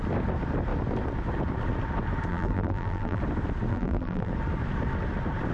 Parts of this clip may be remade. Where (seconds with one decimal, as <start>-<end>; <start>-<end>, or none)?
2.3-3.2; 3.7-4.3